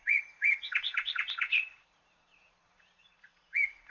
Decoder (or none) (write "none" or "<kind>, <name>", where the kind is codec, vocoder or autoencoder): vocoder, Vocos